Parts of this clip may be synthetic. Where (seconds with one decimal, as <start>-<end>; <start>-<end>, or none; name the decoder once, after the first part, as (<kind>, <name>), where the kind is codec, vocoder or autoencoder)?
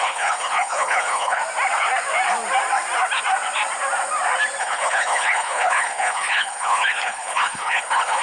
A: 0.0-1.4 (codec, HILCodec); 4.6-8.2